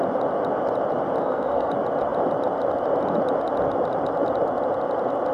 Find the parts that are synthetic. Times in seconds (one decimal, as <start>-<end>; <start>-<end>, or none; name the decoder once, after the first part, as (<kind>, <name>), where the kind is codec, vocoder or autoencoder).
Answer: 1.2-1.7 (codec, SNAC)

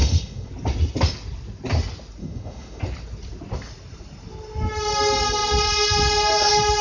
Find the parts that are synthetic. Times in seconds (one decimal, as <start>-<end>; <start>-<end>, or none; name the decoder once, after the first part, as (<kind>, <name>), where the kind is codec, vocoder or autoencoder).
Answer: 0.0-0.5 (autoencoder, DAC-VAE); 2.2-2.8

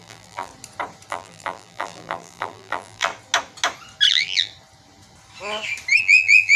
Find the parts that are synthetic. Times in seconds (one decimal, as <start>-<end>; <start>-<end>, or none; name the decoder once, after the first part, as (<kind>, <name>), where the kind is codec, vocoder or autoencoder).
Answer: 0.0-0.5 (vocoder, BigVGAN v2); 1.1-3.1; 4.1-4.5; 6.0-6.6

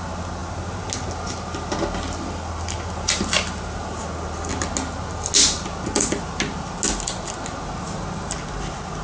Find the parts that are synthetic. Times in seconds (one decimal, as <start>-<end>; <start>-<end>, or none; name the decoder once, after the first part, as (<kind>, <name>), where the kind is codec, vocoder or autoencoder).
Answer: none

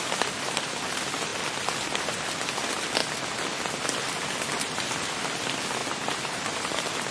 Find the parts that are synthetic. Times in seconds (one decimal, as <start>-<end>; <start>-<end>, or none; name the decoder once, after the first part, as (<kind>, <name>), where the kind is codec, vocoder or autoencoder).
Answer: 5.8-7.1 (vocoder, BigVGAN v2)